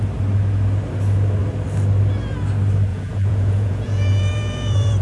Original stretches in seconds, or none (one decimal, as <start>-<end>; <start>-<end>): 0.0-2.9